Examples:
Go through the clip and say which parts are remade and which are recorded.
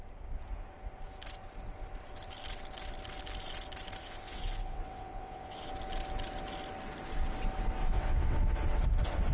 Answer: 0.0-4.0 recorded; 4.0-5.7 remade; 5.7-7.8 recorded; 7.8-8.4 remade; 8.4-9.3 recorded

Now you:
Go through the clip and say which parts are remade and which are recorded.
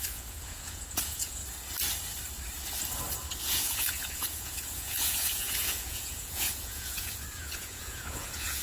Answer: 0.0-1.4 remade; 1.4-3.4 recorded; 3.4-8.6 remade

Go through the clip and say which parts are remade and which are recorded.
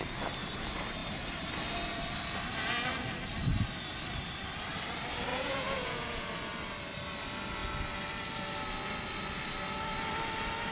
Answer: 0.0-5.3 recorded; 5.3-6.3 remade; 6.3-10.7 recorded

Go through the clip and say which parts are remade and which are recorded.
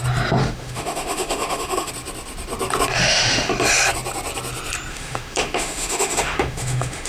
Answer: 0.0-0.4 recorded; 0.4-1.9 remade; 1.9-3.0 recorded; 3.0-3.5 remade; 3.5-4.9 recorded; 4.9-7.1 remade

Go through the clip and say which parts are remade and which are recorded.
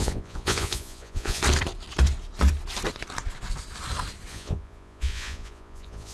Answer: 0.0-1.4 remade; 1.4-4.3 recorded; 4.3-6.1 remade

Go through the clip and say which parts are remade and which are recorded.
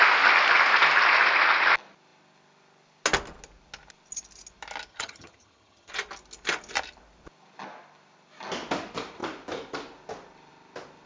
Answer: 0.0-4.9 recorded; 4.9-5.9 remade; 5.9-11.1 recorded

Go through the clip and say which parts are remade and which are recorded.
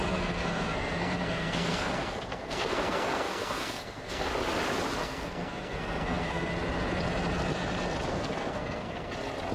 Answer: 0.0-4.3 remade; 4.3-5.0 recorded; 5.0-6.5 remade; 6.5-8.1 recorded; 8.1-9.1 remade; 9.1-9.5 recorded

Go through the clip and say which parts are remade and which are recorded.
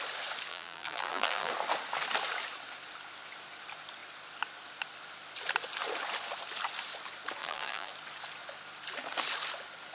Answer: 0.0-0.5 recorded; 0.5-1.5 remade; 1.5-7.4 recorded; 7.4-7.9 remade; 7.9-9.9 recorded